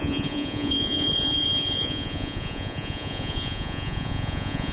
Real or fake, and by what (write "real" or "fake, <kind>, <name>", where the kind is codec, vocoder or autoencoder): fake, vocoder, Vocos